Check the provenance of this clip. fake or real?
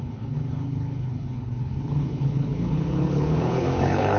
fake